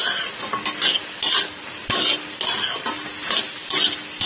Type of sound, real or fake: real